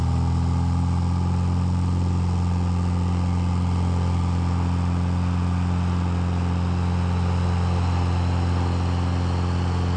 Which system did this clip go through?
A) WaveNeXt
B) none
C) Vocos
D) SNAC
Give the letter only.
B